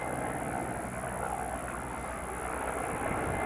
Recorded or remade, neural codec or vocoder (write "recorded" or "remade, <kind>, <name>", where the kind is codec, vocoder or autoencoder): recorded